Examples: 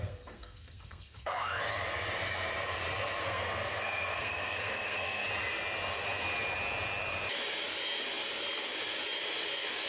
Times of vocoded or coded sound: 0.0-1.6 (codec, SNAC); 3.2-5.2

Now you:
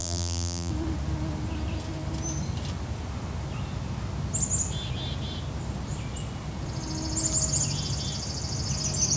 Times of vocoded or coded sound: 0.0-0.7 (vocoder, BigVGAN v2)

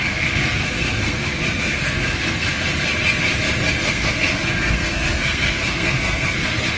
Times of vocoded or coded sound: 0.0-2.5 (codec, SNAC); 3.7-6.8

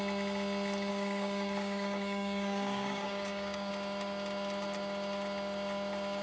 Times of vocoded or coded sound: 0.9-3.7 (codec, DAC)

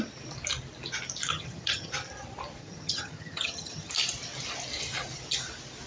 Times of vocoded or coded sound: 1.3-1.9 (vocoder, HiFi-GAN); 2.6-3.9

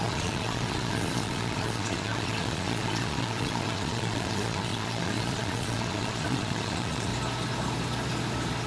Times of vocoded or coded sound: 0.0-7.1 (vocoder, Vocos)

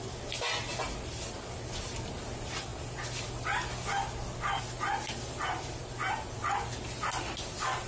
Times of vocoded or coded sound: none